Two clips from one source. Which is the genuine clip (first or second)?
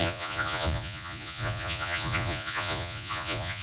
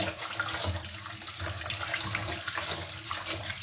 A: second